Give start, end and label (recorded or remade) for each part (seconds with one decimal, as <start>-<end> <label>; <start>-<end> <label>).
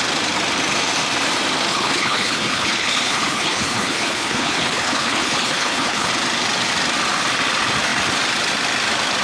0.0-1.7 recorded; 1.7-6.1 remade; 6.1-9.2 recorded